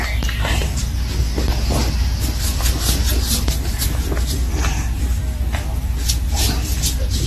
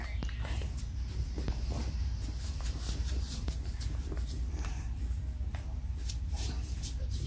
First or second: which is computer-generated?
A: second